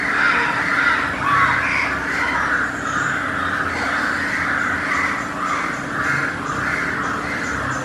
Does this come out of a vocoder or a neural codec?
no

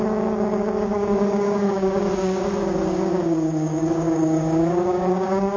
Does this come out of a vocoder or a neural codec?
yes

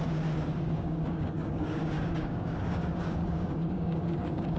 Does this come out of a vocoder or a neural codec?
yes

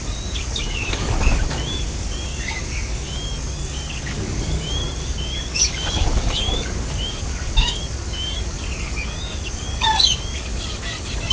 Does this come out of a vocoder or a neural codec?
yes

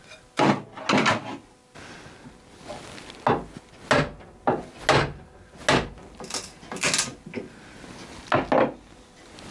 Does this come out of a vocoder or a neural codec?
no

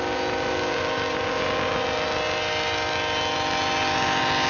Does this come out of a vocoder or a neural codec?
no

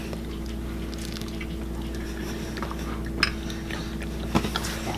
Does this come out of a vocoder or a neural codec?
no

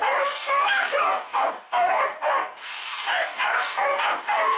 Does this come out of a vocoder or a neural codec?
yes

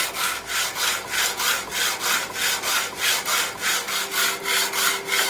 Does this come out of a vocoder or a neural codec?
no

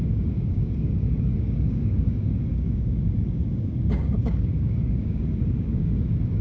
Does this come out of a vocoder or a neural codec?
yes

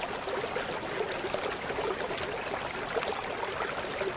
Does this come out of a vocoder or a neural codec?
no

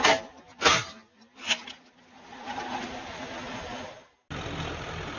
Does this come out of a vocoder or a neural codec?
no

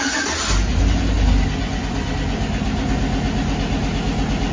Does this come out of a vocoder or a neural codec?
no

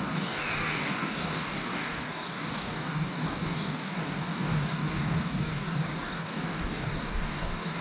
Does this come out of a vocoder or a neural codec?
yes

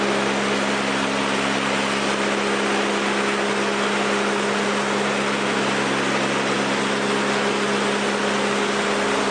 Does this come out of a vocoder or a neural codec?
no